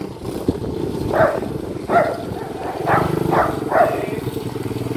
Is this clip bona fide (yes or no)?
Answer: yes